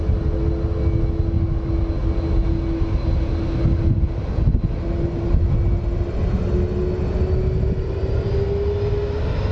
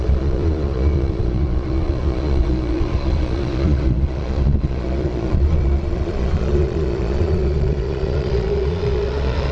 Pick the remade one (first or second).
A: second